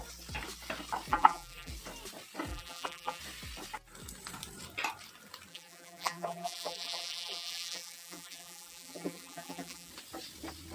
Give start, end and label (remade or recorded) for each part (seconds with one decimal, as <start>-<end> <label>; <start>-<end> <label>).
0.0-1.1 recorded; 1.1-1.7 remade; 1.7-2.5 recorded; 2.5-3.2 remade; 3.2-5.5 recorded; 5.5-9.9 remade; 9.9-10.7 recorded